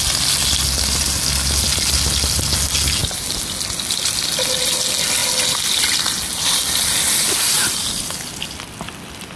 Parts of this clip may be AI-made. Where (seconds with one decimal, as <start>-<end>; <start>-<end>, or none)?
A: none